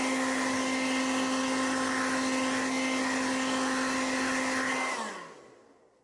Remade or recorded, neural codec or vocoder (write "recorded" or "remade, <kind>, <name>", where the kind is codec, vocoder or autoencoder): recorded